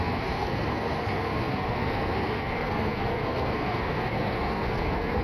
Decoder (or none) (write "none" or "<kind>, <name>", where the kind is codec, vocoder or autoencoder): codec, SNAC